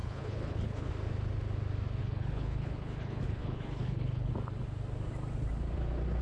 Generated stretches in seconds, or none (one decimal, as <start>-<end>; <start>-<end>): 0.0-0.9; 2.0-4.3